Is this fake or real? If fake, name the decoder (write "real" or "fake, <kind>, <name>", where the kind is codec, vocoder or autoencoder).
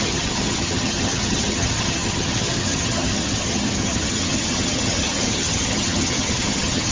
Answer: fake, vocoder, HiFi-GAN